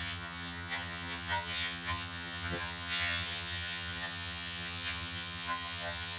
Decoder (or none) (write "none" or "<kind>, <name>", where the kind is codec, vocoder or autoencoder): vocoder, HiFi-GAN